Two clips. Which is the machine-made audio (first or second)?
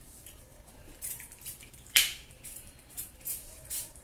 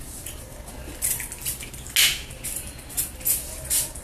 first